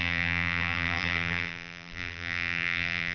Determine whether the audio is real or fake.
fake